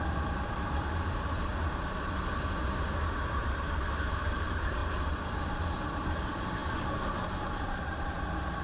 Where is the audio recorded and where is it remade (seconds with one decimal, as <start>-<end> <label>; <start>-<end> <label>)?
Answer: 0.0-1.5 remade; 1.5-3.3 recorded; 3.3-4.8 remade; 4.8-5.3 recorded; 5.3-8.6 remade